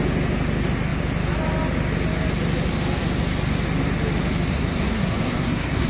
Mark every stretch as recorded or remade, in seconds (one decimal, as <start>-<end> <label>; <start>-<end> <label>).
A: 0.0-4.5 recorded; 4.5-5.9 remade